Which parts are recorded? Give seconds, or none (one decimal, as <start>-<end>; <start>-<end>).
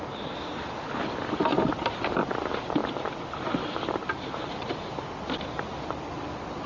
0.0-6.7